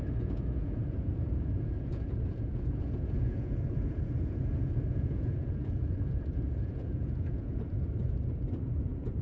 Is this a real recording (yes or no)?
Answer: no